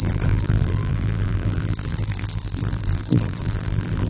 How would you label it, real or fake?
fake